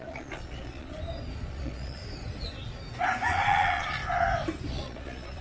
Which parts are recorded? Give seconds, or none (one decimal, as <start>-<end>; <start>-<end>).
1.0-1.5; 2.0-3.3; 4.0-4.7